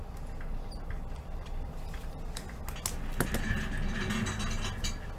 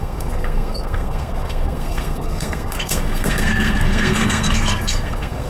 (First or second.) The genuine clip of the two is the first